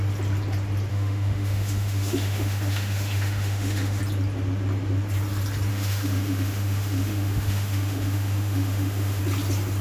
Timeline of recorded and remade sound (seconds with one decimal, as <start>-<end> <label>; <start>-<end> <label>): 0.0-0.9 recorded; 0.9-4.0 remade; 4.0-5.7 recorded; 5.7-9.2 remade; 9.2-9.8 recorded